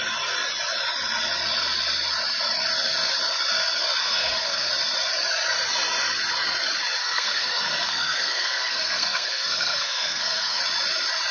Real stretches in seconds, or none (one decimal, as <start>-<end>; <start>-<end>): 0.0-4.0; 4.7-7.0; 10.6-11.3